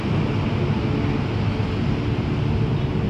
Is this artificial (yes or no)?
no